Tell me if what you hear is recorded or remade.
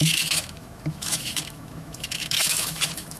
remade